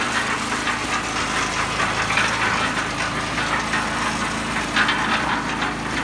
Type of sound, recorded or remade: recorded